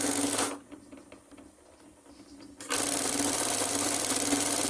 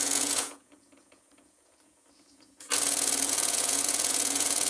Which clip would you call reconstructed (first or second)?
second